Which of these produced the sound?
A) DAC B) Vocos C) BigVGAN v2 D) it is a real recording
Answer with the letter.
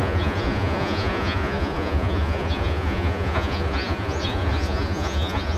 B